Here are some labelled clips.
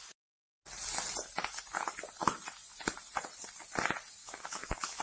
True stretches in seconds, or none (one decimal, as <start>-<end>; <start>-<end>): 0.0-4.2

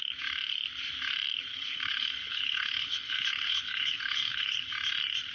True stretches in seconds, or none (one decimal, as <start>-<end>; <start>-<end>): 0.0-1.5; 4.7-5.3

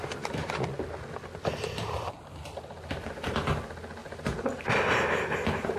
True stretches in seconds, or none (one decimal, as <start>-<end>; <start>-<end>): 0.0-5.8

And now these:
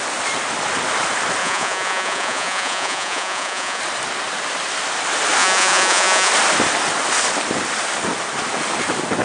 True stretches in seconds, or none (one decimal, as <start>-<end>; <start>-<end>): 0.0-1.4; 3.8-5.4; 6.3-9.2

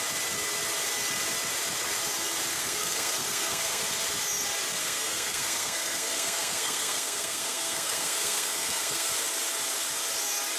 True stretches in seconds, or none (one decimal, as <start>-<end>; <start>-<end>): 0.0-2.5; 3.8-4.8; 9.1-10.6